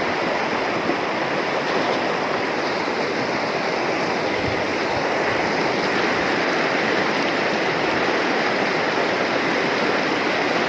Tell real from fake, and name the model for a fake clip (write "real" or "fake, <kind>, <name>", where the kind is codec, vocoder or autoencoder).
real